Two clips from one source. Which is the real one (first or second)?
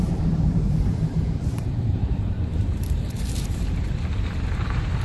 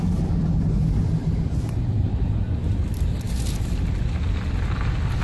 second